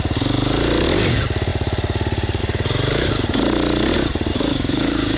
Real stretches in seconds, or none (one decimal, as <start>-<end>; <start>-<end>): 0.0-4.3